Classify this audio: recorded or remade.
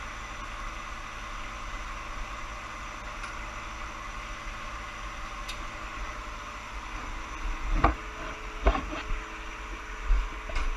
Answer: recorded